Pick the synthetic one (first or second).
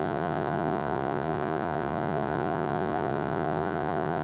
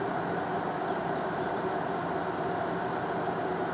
first